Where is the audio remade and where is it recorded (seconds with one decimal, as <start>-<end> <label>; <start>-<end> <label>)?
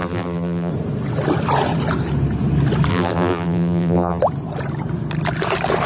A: 0.0-0.7 remade; 0.7-2.9 recorded; 2.9-4.2 remade; 4.2-5.9 recorded